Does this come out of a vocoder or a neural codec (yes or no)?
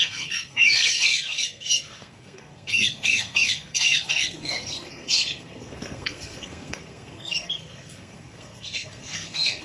yes